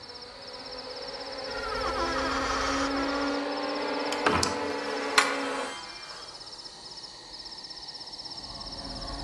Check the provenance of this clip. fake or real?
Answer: real